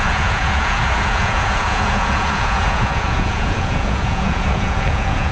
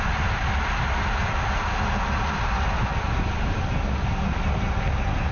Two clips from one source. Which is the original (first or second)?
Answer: second